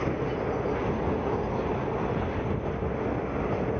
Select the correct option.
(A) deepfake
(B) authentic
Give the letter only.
B